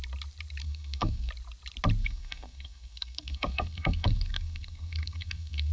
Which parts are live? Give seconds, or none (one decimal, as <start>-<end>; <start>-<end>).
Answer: 0.0-0.6; 1.3-2.0